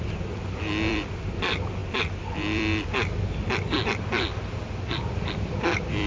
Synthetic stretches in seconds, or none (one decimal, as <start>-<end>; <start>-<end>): 0.0-6.1